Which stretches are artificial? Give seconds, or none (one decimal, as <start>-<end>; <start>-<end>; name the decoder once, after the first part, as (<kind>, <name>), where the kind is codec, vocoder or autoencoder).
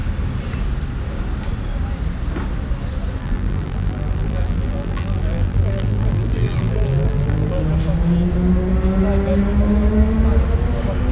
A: 3.2-7.6 (vocoder, BigVGAN v2)